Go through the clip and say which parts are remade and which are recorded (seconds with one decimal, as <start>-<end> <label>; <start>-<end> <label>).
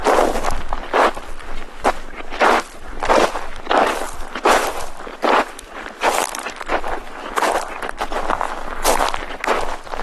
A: 0.0-5.1 recorded; 5.1-6.5 remade; 6.5-7.0 recorded; 7.0-7.5 remade; 7.5-10.0 recorded